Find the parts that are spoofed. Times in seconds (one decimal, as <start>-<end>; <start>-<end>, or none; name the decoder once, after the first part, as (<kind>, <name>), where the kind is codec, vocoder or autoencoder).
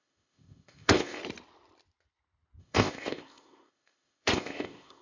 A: 0.0-1.2 (codec, ZipCodec); 2.6-5.0